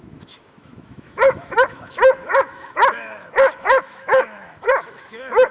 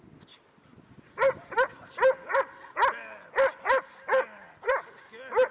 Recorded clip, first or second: second